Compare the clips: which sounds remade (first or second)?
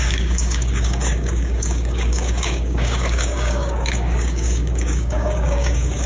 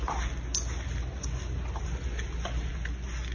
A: first